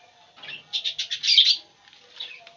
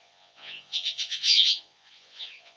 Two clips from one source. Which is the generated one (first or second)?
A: second